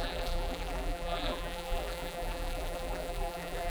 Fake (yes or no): yes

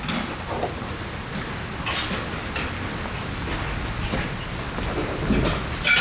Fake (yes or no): no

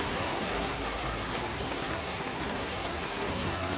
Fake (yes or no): yes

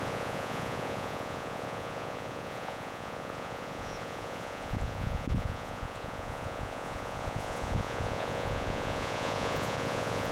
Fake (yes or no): yes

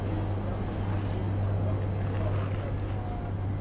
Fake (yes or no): no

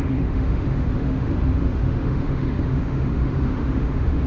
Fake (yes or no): yes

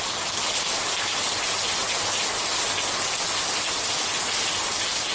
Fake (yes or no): no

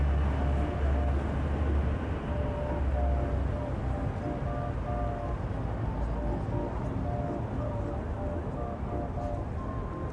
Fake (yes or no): no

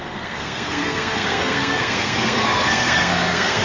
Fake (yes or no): yes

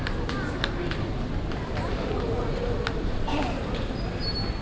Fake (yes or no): no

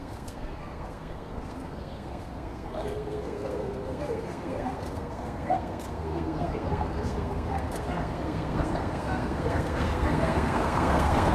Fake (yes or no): yes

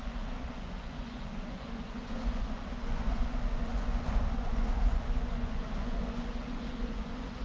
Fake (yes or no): yes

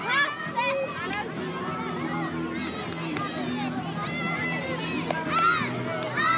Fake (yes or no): no